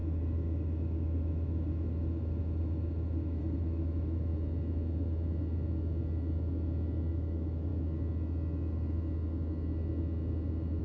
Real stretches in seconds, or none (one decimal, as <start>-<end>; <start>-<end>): 4.3-7.1; 7.7-10.8